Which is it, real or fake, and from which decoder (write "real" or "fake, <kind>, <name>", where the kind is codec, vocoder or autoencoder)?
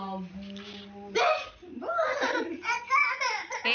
real